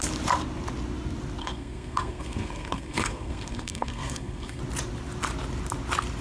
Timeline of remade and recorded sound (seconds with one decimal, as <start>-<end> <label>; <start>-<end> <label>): 0.0-1.4 recorded; 1.4-4.6 remade; 4.6-6.2 recorded